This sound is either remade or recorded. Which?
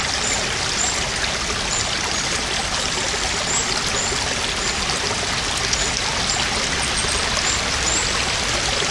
recorded